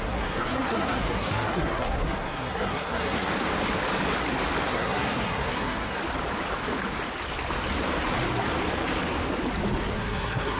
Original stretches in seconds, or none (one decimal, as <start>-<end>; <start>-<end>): 3.3-4.7; 6.0-9.9